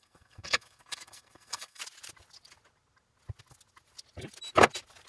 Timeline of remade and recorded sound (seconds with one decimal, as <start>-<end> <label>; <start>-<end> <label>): 0.0-1.8 remade; 1.8-5.1 recorded